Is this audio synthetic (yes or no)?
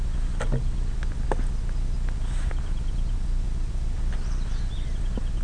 no